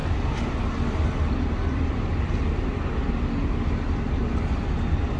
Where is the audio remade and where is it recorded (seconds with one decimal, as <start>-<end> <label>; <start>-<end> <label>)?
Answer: 0.0-5.2 recorded